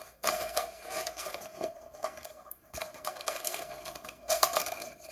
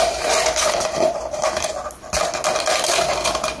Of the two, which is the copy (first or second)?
first